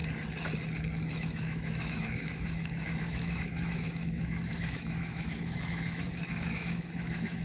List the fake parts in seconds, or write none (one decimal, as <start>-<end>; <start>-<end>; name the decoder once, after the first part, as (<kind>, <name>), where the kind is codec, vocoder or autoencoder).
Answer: 1.1-7.4 (autoencoder, DAC-VAE)